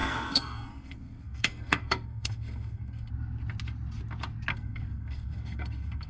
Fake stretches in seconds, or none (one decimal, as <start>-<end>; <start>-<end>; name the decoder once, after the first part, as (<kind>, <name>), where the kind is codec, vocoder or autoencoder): 0.0-3.1 (codec, SNAC); 4.5-6.1